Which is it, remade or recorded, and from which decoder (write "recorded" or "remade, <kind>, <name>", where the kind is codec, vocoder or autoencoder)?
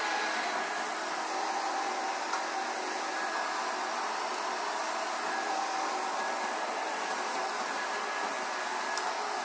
recorded